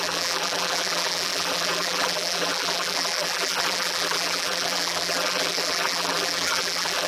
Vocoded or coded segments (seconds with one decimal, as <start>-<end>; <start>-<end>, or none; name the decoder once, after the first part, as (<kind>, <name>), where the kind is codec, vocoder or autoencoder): 0.0-7.1 (vocoder, BigVGAN v2)